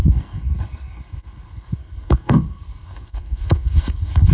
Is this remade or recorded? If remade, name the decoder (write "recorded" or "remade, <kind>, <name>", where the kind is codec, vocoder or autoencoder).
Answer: remade, codec, SNAC